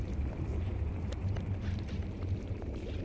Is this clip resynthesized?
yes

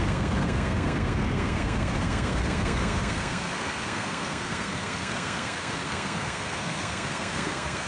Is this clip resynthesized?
yes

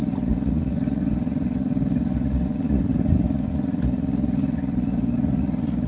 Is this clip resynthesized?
yes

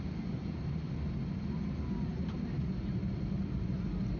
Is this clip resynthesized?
no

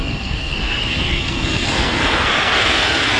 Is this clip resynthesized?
yes